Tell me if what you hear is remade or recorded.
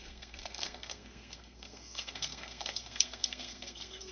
remade